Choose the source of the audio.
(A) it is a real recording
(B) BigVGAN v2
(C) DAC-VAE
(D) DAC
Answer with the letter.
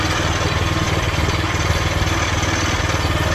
A